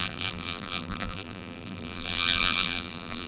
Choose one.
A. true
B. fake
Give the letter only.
B